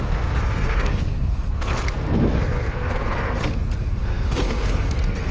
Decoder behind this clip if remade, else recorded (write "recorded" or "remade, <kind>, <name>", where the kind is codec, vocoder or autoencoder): remade, codec, SNAC